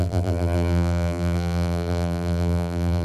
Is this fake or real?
fake